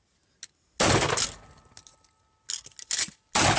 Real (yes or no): yes